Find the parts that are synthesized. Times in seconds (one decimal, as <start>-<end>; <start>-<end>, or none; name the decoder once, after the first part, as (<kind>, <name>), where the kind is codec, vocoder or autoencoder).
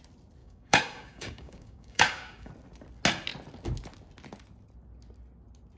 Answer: 0.4-2.5 (codec, DAC)